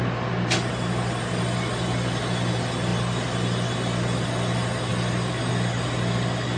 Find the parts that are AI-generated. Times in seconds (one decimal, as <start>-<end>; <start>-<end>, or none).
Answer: none